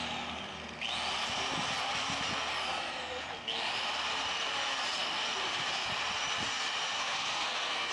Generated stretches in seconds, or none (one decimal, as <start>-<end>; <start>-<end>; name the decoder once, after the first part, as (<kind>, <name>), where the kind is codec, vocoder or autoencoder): 7.0-7.9 (codec, SNAC)